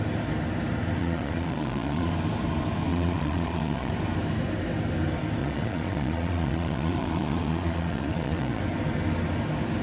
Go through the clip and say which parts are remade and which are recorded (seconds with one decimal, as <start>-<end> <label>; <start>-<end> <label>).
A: 0.0-1.0 recorded; 1.0-2.1 remade; 2.1-2.9 recorded; 2.9-3.9 remade; 3.9-5.4 recorded; 5.4-8.6 remade; 8.6-9.8 recorded